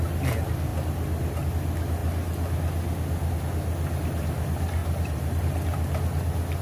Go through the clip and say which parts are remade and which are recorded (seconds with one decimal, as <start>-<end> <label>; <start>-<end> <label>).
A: 0.0-4.8 recorded; 4.8-5.4 remade; 5.4-6.6 recorded